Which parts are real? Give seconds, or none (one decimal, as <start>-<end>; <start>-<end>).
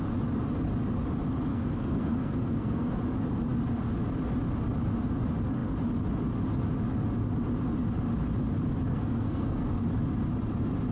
0.0-1.5; 3.0-8.9; 9.8-10.9